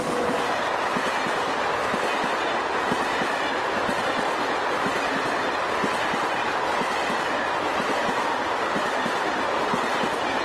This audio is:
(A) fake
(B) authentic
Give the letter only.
B